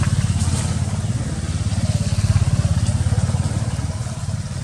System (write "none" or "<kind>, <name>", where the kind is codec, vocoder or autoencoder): none